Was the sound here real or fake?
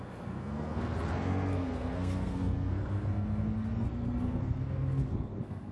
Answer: fake